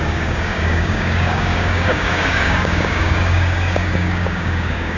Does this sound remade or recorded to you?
remade